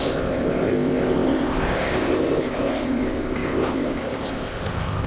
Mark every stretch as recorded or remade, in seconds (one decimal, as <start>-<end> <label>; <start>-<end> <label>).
0.0-5.1 remade